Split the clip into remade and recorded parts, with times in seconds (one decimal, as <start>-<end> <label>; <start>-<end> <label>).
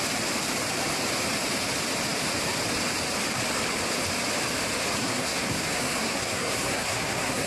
0.0-5.0 recorded; 5.0-7.5 remade